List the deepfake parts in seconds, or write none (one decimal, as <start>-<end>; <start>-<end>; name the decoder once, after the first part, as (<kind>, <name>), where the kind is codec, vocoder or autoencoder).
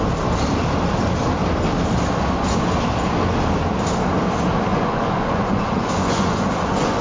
4.7-7.0 (vocoder, Vocos)